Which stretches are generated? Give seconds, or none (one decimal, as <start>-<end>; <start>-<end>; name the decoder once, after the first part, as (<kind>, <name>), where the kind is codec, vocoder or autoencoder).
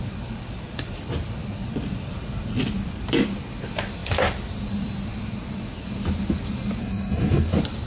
6.8-7.5 (codec, SNAC)